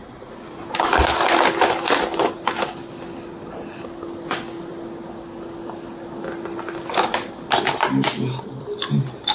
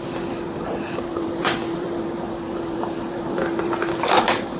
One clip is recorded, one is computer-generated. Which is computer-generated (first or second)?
second